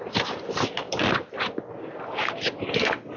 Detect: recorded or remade recorded